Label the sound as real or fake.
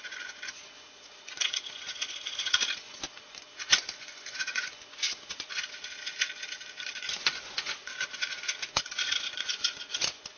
fake